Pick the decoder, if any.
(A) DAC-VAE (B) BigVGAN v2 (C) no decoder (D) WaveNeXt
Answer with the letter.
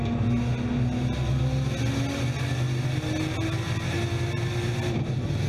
C